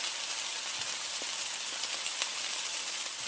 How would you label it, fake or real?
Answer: real